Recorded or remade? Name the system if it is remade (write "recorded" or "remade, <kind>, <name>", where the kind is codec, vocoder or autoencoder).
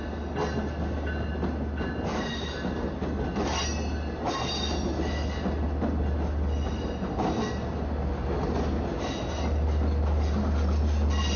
recorded